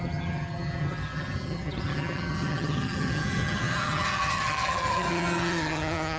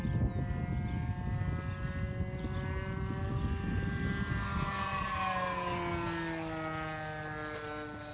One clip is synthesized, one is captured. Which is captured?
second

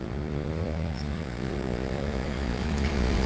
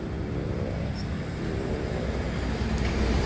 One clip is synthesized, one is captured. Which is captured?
second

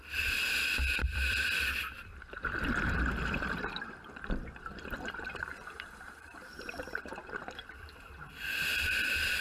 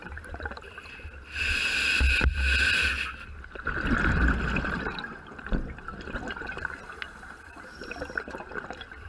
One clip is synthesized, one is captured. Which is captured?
second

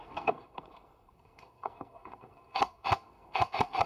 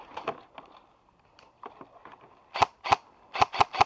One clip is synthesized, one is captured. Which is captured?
second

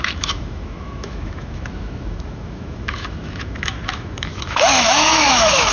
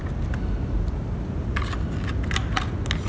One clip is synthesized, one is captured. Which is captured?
second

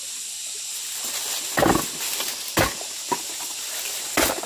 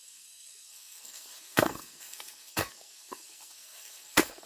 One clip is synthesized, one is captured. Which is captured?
first